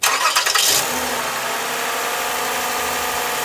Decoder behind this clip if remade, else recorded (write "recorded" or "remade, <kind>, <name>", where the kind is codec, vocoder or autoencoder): recorded